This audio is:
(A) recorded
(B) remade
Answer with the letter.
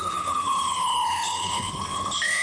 B